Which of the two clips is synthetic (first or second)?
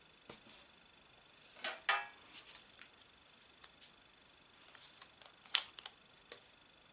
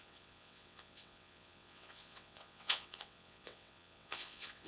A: second